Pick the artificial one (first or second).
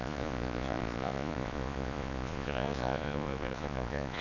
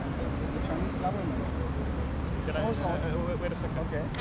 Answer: first